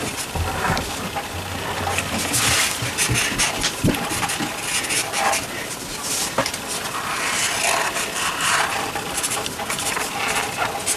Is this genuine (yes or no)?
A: yes